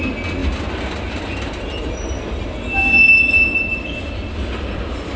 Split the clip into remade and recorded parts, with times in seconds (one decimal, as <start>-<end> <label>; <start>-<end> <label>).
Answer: 0.0-5.2 recorded